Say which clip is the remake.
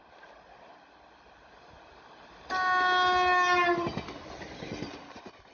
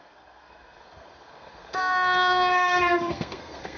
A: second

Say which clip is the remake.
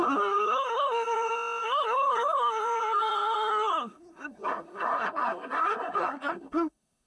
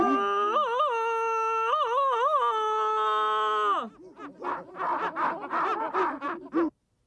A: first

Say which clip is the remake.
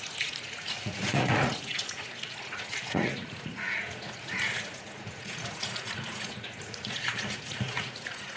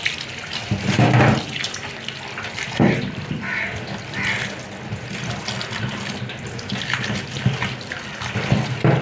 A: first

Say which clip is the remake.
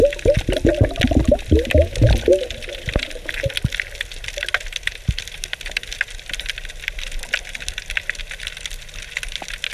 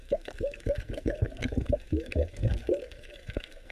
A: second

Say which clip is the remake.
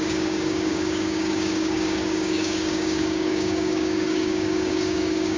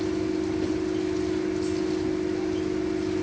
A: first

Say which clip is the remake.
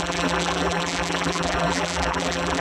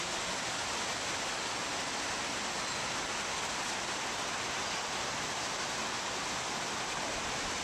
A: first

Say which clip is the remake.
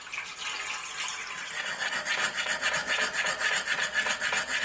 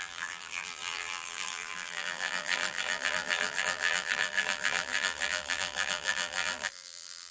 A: second